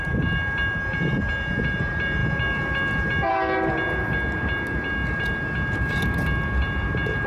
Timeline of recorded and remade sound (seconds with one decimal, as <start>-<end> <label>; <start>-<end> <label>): 0.0-7.3 recorded